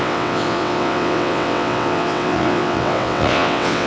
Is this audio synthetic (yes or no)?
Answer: yes